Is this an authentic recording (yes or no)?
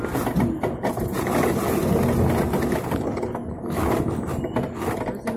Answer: yes